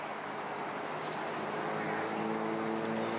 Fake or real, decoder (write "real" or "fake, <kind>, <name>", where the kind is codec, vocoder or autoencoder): real